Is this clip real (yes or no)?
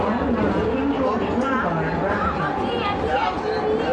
yes